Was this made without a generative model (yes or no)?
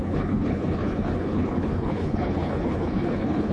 no